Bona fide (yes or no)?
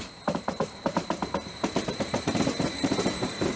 no